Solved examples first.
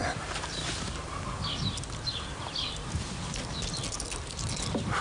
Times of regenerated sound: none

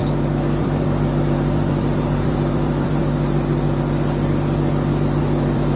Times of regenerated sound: 0.6-3.0; 5.2-5.8

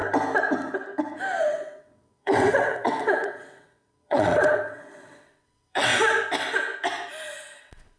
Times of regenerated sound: 1.4-5.9; 7.6-8.0

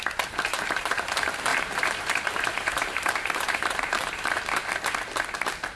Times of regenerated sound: 0.5-1.0; 1.5-4.3

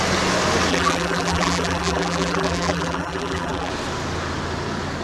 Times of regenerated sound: 0.7-3.7